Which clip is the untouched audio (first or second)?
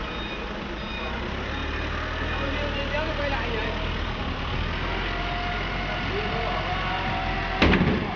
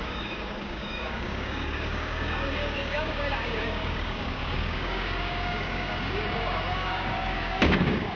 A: first